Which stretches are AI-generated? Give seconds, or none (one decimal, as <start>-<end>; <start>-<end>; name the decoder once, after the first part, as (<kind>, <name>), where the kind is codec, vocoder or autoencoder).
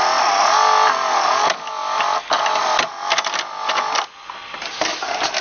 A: none